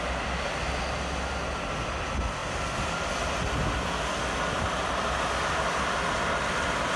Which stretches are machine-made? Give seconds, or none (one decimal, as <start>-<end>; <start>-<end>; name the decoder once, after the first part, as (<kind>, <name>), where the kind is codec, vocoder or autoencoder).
none